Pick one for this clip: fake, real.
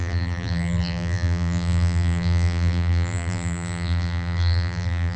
fake